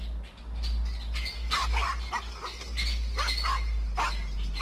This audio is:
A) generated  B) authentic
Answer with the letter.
B